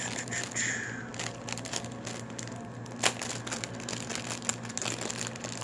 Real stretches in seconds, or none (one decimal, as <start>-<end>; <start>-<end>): 0.0-5.6